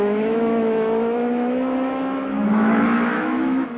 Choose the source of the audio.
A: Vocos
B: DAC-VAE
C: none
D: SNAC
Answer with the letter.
B